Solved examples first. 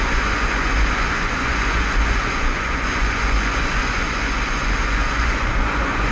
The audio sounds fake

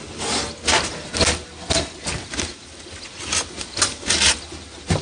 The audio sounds real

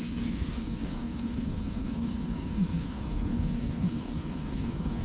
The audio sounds fake